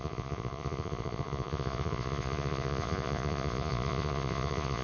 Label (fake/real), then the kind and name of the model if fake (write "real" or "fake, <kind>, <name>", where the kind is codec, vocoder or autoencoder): fake, vocoder, Vocos